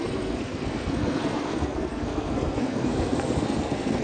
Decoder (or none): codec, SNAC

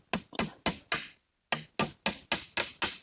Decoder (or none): none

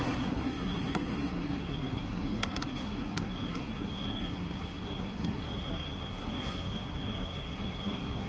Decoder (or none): codec, SNAC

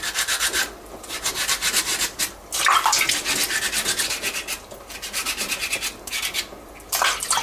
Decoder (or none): none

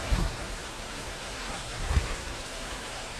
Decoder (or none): codec, SNAC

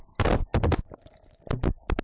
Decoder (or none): none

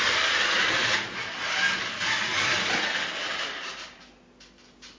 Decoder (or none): none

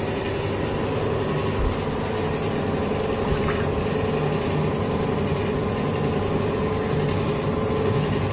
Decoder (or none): none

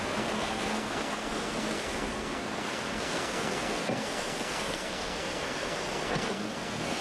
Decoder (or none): codec, SNAC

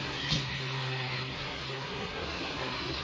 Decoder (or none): codec, SNAC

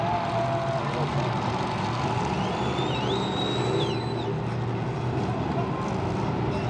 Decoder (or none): none